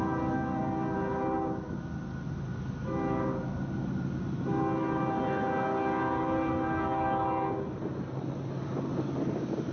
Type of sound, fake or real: real